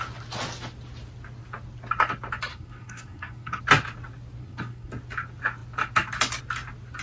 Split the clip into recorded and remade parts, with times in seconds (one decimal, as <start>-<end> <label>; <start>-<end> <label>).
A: 0.0-2.5 recorded; 2.5-3.6 remade; 3.6-4.4 recorded; 4.4-4.9 remade; 4.9-7.0 recorded